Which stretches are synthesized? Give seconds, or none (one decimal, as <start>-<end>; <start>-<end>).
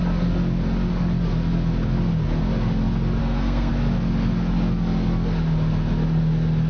3.2-3.7